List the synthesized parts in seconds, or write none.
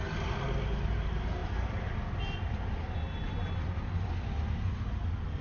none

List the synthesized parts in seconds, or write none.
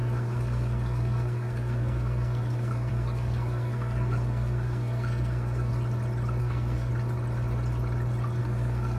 0.0-5.7 (codec, SNAC); 6.4-6.9; 8.4-9.0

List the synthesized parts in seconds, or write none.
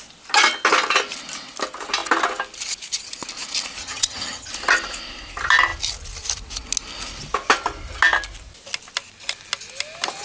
3.8-4.5 (vocoder, HiFi-GAN)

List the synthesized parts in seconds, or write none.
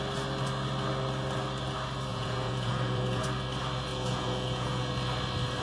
2.1-3.2 (vocoder, Vocos); 3.9-4.9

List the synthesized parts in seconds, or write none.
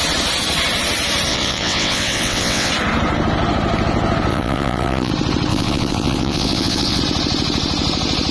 1.3-2.7 (vocoder, WaveNeXt); 4.3-5.1; 5.5-7.0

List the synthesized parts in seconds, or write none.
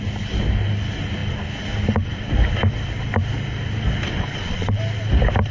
4.3-4.8 (vocoder, Vocos)